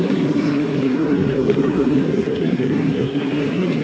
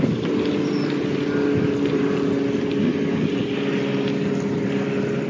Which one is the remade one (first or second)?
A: first